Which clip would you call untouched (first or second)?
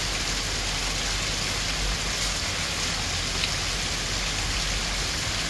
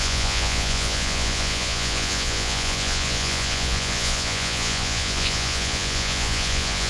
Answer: first